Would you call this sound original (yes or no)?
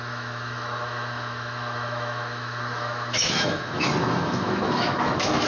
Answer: no